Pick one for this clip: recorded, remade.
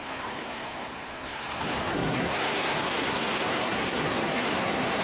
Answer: remade